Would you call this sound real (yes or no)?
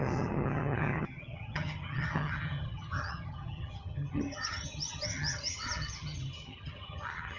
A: no